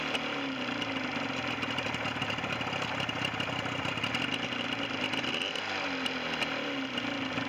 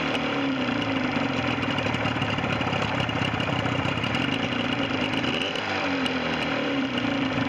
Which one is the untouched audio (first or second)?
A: first